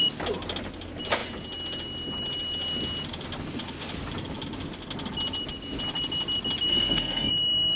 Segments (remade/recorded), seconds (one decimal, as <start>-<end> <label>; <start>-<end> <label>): 0.0-6.7 recorded; 6.7-7.3 remade; 7.3-7.8 recorded